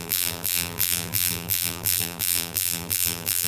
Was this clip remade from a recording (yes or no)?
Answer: yes